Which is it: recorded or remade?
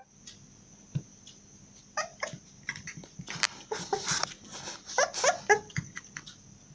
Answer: recorded